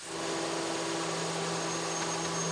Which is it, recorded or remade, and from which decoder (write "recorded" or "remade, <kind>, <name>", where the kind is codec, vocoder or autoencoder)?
recorded